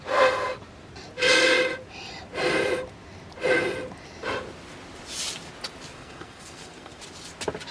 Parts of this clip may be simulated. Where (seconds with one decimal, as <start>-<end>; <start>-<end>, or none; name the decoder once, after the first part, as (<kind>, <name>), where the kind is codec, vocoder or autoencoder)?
5.9-7.0 (codec, SNAC)